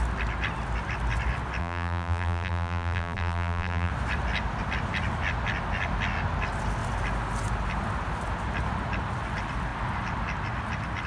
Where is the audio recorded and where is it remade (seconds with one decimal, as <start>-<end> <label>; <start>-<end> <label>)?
0.0-1.6 recorded; 1.6-3.9 remade; 3.9-11.1 recorded

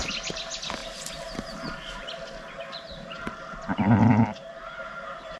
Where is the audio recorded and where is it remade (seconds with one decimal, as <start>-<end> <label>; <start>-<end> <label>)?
0.0-0.8 recorded; 0.8-3.2 remade; 3.2-4.0 recorded; 4.0-5.4 remade

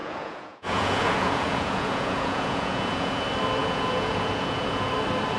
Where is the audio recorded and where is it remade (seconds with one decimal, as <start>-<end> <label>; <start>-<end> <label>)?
0.0-3.2 remade; 3.2-3.6 recorded; 3.6-4.9 remade; 4.9-5.4 recorded

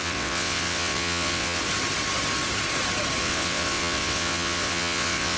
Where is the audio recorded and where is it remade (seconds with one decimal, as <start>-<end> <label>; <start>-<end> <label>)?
0.0-1.6 remade; 1.6-3.2 recorded; 3.2-5.4 remade